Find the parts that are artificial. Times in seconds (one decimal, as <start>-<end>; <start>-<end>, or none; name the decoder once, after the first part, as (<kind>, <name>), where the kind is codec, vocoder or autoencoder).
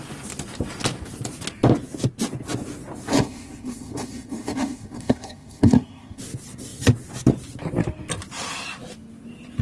3.1-6.2 (codec, SNAC)